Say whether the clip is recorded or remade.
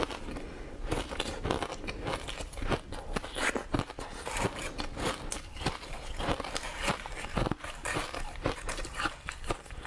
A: recorded